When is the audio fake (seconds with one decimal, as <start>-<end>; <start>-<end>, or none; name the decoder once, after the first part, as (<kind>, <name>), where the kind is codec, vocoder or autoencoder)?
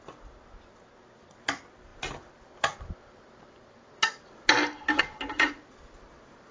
none